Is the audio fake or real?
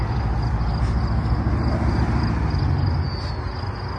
real